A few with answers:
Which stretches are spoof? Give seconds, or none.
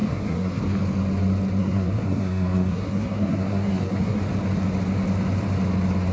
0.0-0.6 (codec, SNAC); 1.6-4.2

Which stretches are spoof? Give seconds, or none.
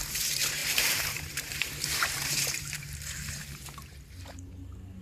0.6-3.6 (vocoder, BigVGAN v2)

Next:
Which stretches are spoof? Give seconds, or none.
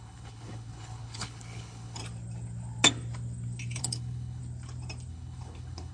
0.0-2.0 (codec, HILCodec); 3.8-4.4; 5.1-5.9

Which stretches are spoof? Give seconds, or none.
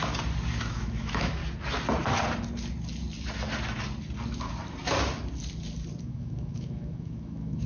0.6-1.4 (autoencoder, DAC-VAE); 6.0-7.7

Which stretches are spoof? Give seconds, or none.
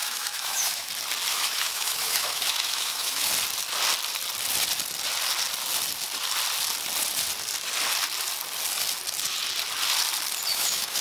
0.0-0.9 (autoencoder, DAC-VAE); 1.3-3.3; 10.5-11.0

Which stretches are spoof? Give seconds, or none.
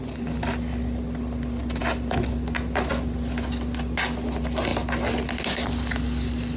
none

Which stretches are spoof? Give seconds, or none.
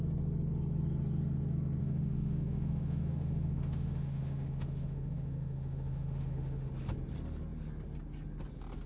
1.8-6.7 (autoencoder, DAC-VAE)